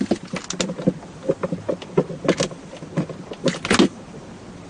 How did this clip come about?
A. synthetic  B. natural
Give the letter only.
B